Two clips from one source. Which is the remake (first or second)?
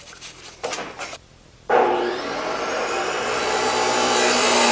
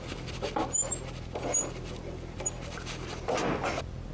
first